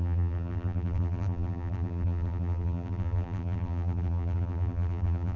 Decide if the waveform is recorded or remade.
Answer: remade